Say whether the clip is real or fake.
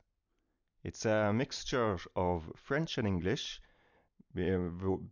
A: real